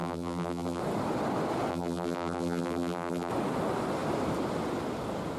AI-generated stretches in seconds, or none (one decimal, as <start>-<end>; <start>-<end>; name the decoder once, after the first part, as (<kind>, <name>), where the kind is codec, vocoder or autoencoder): 0.0-0.8 (vocoder, BigVGAN v2); 1.7-3.3